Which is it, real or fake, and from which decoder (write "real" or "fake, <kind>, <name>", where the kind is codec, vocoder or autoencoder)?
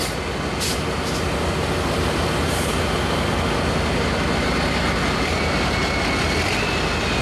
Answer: real